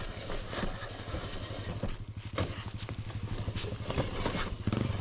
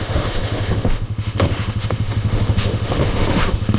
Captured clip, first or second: first